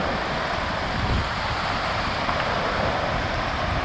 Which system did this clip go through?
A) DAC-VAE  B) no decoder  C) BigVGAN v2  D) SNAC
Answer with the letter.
C